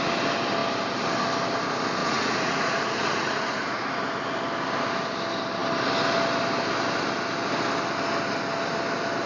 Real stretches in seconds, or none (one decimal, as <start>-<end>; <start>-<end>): 0.0-2.0; 4.0-9.3